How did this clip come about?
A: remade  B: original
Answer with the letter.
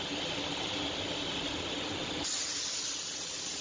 B